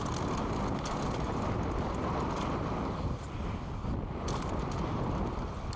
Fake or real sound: real